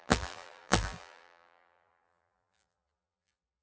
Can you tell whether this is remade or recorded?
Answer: remade